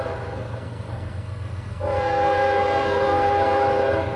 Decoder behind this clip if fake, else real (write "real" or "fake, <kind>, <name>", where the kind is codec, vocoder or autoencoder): fake, codec, SNAC